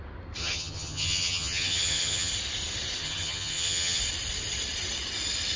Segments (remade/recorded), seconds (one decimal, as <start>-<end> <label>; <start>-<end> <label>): 0.0-0.4 recorded; 0.4-2.3 remade; 2.3-3.0 recorded; 3.0-4.0 remade; 4.0-5.6 recorded

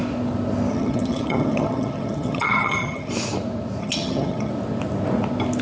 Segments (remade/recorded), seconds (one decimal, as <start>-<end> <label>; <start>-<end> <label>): 0.0-0.7 recorded; 0.7-3.1 remade; 3.1-3.8 recorded; 3.8-4.5 remade; 4.5-5.6 recorded

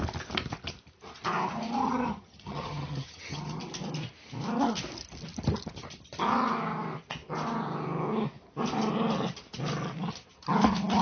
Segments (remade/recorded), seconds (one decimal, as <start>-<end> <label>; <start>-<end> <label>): 0.0-1.8 recorded; 1.8-3.6 remade; 3.6-11.0 recorded

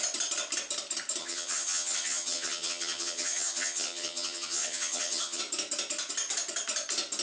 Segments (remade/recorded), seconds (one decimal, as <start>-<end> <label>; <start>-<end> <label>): 0.0-1.2 recorded; 1.2-5.4 remade; 5.4-7.2 recorded

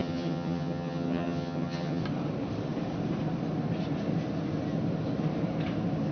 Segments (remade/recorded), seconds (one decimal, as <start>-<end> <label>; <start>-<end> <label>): 0.0-2.0 remade; 2.0-6.1 recorded